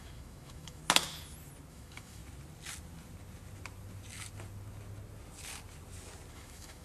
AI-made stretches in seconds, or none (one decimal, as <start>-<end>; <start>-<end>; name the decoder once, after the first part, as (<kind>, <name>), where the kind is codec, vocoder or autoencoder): 0.0-0.8 (autoencoder, DAC-VAE); 1.7-2.2; 6.3-6.8